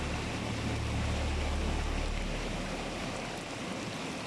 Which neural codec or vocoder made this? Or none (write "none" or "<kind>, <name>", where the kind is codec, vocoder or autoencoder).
none